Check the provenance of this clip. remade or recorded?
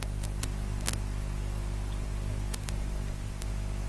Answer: recorded